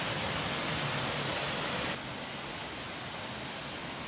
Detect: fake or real real